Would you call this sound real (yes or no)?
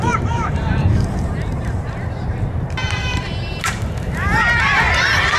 no